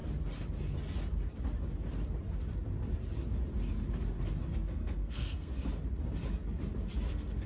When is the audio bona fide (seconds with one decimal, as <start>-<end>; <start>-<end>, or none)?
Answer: 0.0-4.5; 5.5-7.1